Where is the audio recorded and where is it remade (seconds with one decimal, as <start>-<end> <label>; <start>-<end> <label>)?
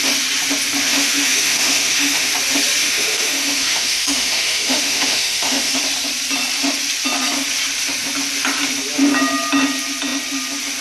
0.0-0.8 recorded; 0.8-2.3 remade; 2.3-2.8 recorded; 2.8-5.7 remade; 5.7-10.8 recorded